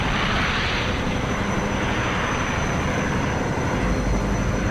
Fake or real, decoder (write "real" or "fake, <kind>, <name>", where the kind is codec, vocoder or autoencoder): real